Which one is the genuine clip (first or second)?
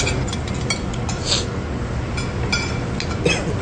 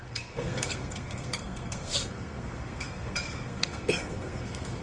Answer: first